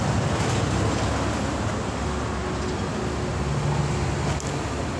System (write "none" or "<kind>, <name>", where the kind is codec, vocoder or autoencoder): none